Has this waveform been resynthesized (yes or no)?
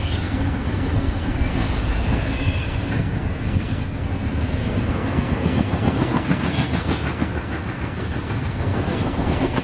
yes